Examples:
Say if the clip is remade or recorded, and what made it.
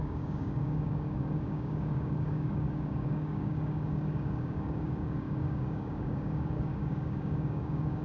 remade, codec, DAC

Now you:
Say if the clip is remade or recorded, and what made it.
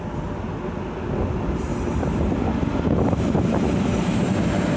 recorded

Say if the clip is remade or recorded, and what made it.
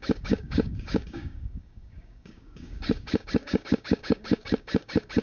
remade, codec, DAC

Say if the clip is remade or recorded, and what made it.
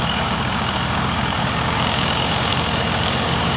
remade, codec, DAC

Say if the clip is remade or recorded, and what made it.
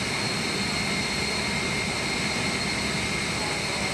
recorded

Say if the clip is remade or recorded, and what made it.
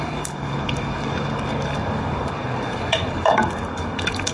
remade, codec, DAC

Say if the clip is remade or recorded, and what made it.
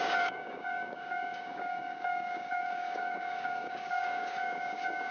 remade, codec, DAC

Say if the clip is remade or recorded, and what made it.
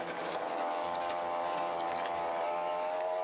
remade, codec, DAC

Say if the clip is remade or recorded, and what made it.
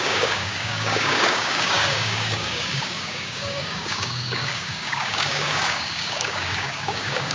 remade, codec, DAC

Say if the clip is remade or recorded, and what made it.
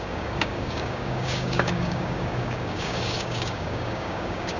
remade, codec, DAC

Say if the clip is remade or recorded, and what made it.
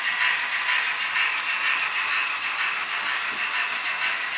recorded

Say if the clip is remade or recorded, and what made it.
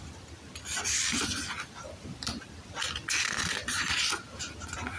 recorded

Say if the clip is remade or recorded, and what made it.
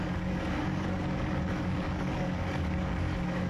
remade, codec, DAC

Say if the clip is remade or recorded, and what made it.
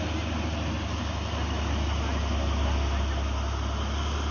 recorded